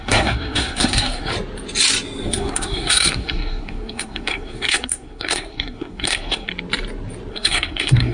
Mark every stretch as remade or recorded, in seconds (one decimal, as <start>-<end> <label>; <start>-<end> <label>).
0.0-1.3 remade; 1.3-2.3 recorded; 2.3-6.5 remade; 6.5-7.3 recorded; 7.3-8.1 remade